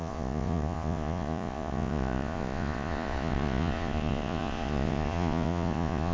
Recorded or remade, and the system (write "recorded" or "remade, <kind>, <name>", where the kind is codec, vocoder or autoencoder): remade, vocoder, Vocos